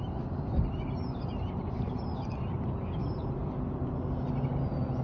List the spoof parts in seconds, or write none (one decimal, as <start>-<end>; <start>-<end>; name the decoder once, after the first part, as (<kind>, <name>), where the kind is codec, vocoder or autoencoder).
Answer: none